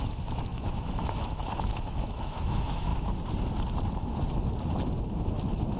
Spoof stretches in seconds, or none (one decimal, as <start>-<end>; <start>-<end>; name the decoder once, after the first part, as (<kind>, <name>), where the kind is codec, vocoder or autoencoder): 0.0-2.9 (autoencoder, DAC-VAE)